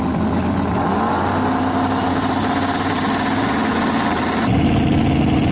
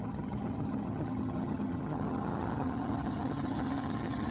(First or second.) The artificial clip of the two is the second